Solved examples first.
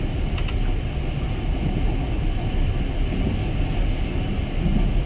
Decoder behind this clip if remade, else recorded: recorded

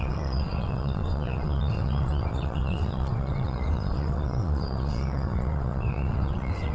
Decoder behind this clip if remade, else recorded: remade, vocoder, WaveNeXt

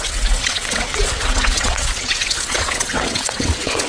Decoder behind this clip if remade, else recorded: remade, vocoder, WaveNeXt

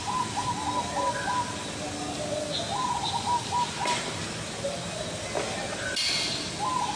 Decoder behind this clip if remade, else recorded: recorded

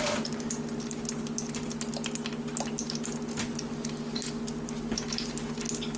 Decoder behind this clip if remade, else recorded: recorded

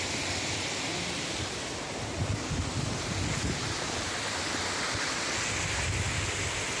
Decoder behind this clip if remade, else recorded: recorded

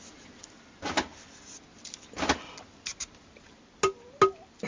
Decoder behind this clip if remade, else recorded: recorded